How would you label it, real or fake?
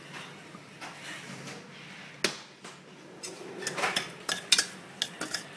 real